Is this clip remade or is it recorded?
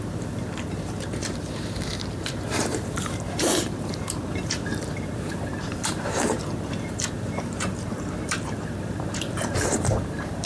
remade